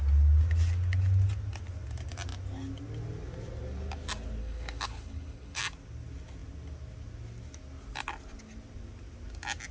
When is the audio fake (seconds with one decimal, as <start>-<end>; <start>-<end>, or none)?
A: 4.4-5.6